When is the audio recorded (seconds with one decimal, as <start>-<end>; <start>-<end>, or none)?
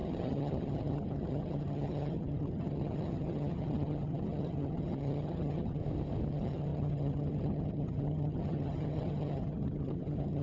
5.8-6.3